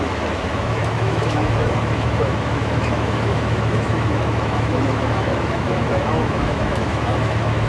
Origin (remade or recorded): remade